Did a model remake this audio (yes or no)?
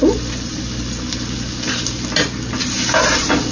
no